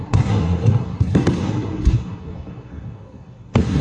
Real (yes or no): no